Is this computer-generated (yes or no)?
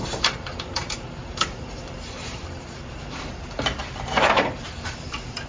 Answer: yes